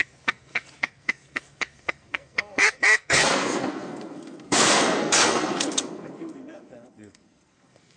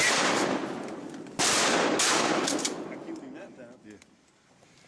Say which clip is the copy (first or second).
first